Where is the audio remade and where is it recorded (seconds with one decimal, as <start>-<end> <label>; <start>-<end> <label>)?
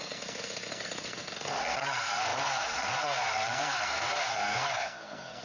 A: 0.0-5.4 remade